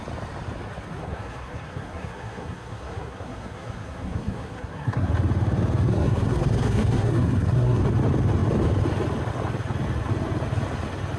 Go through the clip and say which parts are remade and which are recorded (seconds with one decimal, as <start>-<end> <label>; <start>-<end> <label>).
0.0-1.0 recorded; 1.0-5.1 remade; 5.1-5.9 recorded; 5.9-7.8 remade; 7.8-11.2 recorded